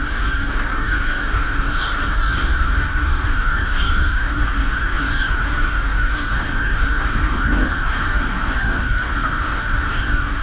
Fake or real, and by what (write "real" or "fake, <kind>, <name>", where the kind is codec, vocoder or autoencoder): fake, codec, DAC